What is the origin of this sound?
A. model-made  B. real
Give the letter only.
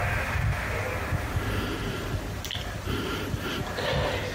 B